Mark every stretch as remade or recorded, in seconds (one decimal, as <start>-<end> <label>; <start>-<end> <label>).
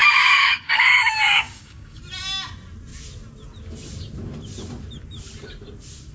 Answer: 0.0-2.0 remade; 2.0-6.1 recorded